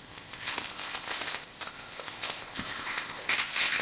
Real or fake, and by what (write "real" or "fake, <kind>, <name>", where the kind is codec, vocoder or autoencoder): fake, codec, ZipCodec